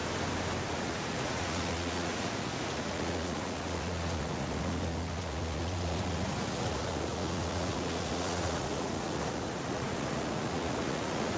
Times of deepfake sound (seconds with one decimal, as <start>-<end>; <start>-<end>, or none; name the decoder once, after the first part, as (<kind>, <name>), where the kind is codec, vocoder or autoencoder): 0.7-11.4 (vocoder, Vocos)